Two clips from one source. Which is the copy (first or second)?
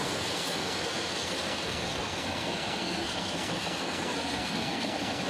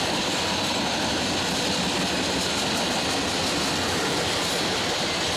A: first